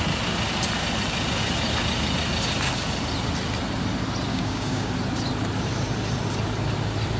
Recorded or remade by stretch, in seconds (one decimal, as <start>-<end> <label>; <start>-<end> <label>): 0.0-4.3 recorded; 4.3-4.9 remade; 4.9-7.2 recorded